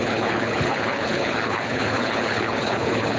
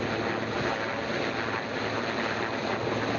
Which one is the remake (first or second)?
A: first